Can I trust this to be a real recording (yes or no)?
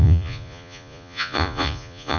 no